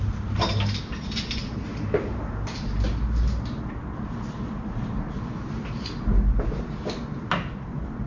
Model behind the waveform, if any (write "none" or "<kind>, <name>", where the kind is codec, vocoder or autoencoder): none